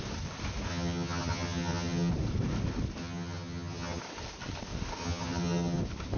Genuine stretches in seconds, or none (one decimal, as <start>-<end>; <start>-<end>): 0.0-0.7; 2.1-3.0; 4.0-5.0; 5.8-6.2